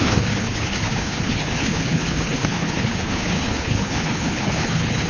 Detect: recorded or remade remade